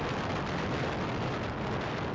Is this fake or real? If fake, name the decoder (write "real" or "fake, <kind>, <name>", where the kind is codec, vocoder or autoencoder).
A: real